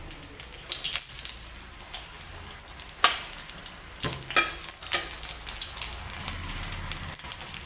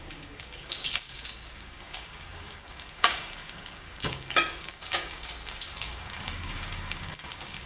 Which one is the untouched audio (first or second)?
first